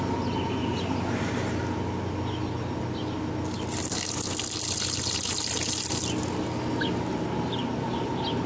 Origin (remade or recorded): recorded